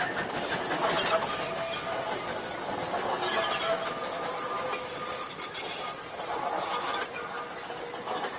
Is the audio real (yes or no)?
yes